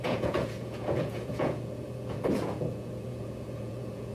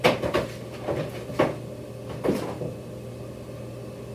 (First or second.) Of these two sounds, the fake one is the first